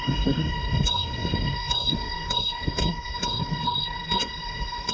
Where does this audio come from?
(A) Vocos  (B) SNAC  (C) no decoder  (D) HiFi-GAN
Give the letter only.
B